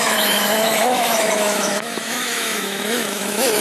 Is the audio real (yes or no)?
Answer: no